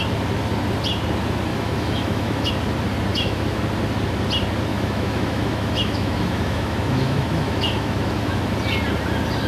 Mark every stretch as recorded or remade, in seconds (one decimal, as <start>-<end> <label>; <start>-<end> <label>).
0.0-1.5 recorded; 1.5-2.5 remade; 2.5-3.1 recorded; 3.1-3.6 remade; 3.6-4.7 recorded; 4.7-8.4 remade; 8.4-9.5 recorded